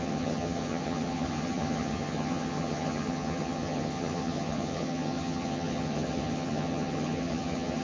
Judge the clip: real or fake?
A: fake